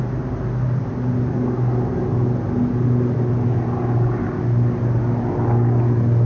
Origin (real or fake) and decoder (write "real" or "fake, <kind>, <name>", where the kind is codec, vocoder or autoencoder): real